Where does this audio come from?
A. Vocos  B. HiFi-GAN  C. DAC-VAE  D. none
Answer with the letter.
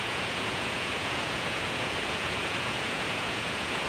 A